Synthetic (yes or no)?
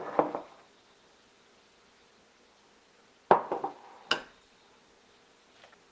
no